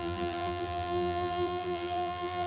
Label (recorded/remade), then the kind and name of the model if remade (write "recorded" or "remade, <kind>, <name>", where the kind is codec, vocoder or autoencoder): remade, vocoder, BigVGAN v2